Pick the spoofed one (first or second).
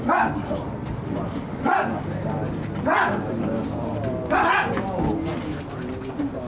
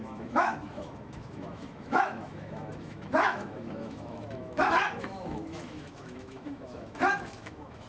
second